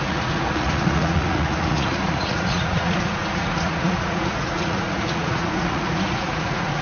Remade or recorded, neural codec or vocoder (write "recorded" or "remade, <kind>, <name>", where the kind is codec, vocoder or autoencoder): remade, vocoder, Vocos